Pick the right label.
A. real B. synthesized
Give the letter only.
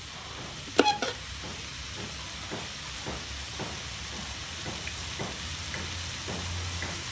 A